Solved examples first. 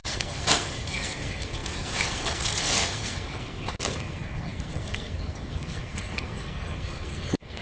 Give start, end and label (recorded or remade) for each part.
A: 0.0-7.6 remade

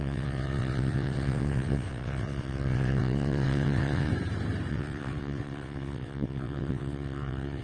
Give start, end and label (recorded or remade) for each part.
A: 0.0-4.1 remade; 4.1-4.7 recorded; 4.7-7.6 remade

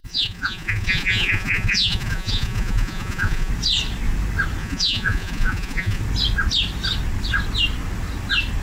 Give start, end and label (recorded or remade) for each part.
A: 0.0-3.5 remade; 3.5-4.6 recorded; 4.6-6.0 remade; 6.0-8.6 recorded